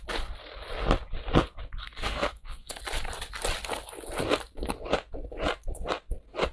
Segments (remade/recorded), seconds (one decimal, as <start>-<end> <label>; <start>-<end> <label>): 0.0-1.8 recorded; 1.8-2.8 remade; 2.8-6.5 recorded